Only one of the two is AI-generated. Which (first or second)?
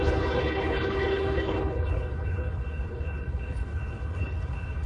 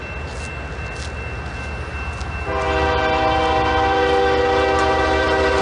first